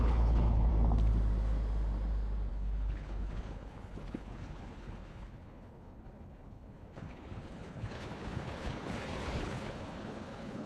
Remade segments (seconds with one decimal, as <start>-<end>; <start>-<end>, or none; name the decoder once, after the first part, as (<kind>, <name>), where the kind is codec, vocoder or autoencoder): 0.0-0.7 (codec, HILCodec); 2.5-10.7